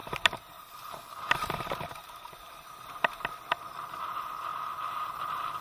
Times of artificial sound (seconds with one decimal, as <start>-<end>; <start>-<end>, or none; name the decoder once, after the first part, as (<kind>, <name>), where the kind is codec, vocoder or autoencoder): none